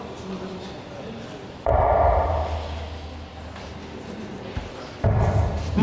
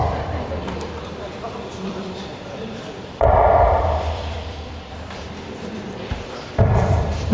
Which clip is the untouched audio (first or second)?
first